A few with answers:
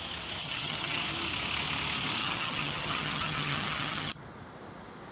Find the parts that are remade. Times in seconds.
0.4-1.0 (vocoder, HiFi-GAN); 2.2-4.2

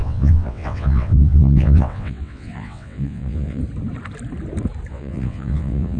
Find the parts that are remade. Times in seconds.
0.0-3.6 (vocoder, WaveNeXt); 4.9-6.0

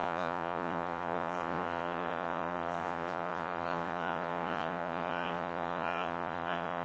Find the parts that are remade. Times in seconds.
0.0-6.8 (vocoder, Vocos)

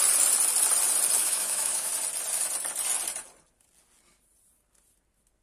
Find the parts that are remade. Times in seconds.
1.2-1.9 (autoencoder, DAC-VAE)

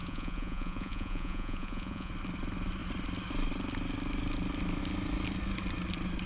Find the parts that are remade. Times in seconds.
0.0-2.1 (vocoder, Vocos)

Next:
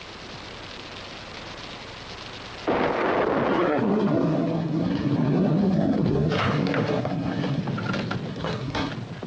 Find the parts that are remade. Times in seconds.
3.5-7.6 (codec, SNAC); 8.3-8.9

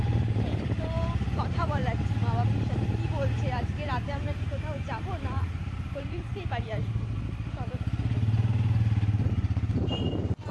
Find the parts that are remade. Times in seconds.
0.0-1.8 (vocoder, BigVGAN v2); 5.1-6.3; 9.8-10.5

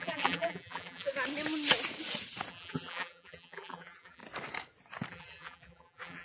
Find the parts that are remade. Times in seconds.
0.0-1.1 (vocoder, BigVGAN v2); 2.5-4.2; 5.1-6.2